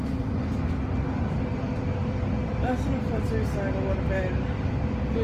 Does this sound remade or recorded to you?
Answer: recorded